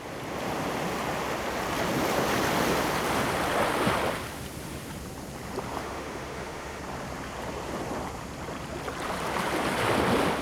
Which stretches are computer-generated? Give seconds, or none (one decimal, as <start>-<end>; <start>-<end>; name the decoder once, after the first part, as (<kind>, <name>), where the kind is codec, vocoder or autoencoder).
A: 5.8-6.8 (autoencoder, DAC-VAE)